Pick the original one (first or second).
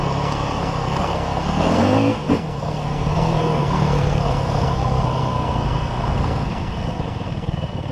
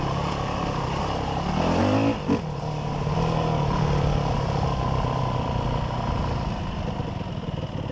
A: second